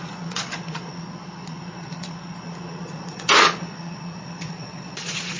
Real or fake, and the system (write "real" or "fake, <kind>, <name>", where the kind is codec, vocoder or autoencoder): fake, vocoder, Vocos